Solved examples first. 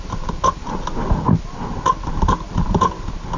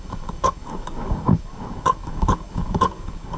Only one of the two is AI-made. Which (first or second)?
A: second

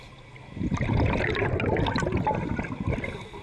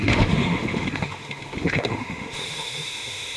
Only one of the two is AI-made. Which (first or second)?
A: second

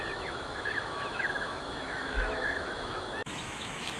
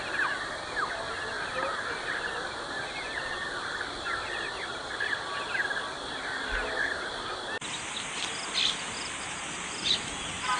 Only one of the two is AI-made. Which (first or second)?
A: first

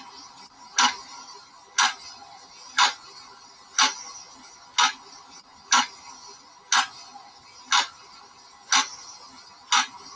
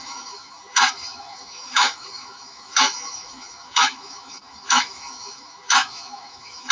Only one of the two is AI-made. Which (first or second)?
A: second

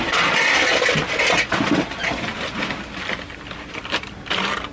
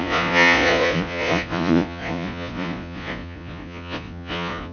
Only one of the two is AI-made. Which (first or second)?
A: second